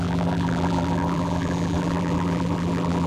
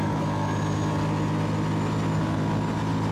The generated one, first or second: first